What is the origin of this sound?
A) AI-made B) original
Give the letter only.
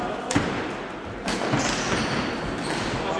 B